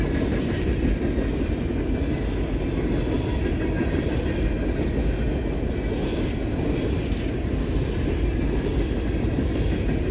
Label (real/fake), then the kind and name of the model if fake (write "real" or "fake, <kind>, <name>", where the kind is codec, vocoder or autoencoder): real